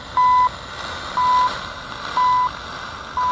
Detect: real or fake real